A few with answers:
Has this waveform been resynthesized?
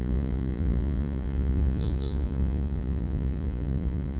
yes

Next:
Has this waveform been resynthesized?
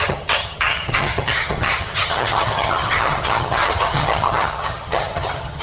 yes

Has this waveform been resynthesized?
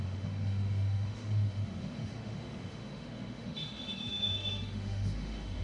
yes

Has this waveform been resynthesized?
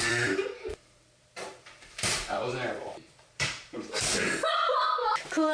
yes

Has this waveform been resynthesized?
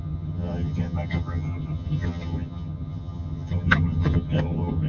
yes